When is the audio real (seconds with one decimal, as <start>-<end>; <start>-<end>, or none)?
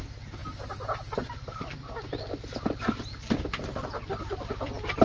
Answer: 0.0-5.0